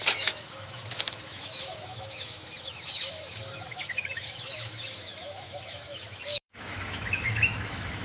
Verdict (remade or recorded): remade